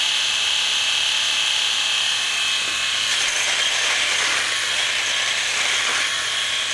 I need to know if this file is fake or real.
real